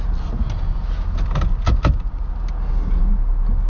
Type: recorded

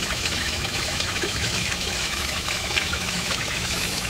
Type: remade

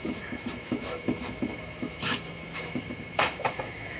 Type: remade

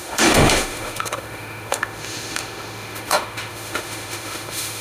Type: remade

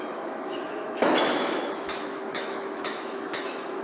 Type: remade